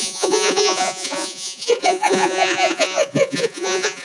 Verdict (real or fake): fake